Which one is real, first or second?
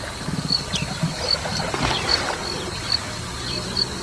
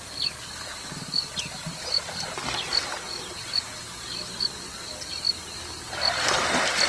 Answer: second